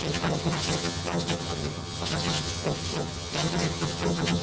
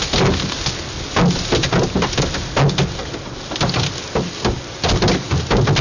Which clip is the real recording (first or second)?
second